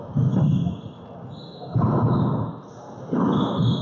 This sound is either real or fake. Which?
real